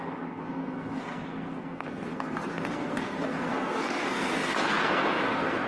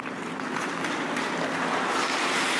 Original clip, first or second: second